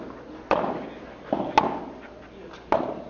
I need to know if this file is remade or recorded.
recorded